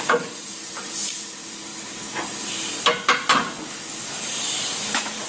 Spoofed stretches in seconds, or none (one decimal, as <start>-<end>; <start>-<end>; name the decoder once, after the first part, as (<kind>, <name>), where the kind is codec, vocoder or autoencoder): none